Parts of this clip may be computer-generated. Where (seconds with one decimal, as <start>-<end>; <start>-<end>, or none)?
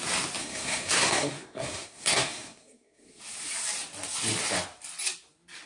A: 0.4-3.2